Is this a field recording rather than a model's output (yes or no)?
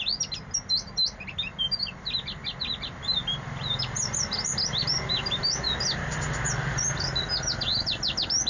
yes